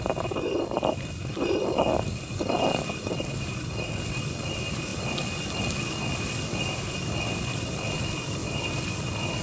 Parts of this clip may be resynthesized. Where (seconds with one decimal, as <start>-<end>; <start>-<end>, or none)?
none